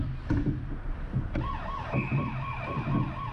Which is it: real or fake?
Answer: fake